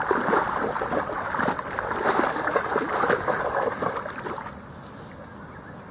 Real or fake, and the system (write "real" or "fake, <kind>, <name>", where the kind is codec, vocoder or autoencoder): real